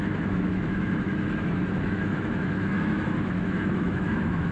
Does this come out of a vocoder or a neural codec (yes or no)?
yes